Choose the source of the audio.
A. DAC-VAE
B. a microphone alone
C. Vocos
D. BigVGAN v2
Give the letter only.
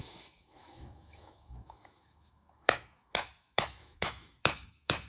A